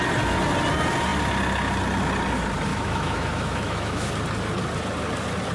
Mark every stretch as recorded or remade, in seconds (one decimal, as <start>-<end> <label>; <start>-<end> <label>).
0.0-2.7 recorded; 2.7-4.1 remade; 4.1-5.5 recorded

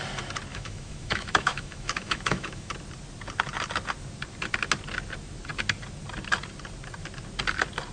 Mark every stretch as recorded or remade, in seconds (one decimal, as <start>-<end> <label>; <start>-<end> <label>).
0.0-0.5 recorded; 0.5-2.7 remade; 2.7-7.9 recorded